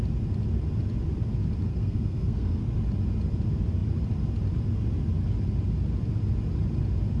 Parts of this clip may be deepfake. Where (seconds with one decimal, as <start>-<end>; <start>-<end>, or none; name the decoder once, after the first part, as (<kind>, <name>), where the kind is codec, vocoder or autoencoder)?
1.7-2.6 (codec, SNAC)